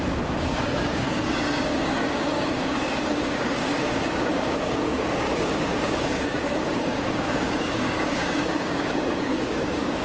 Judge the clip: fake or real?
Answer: fake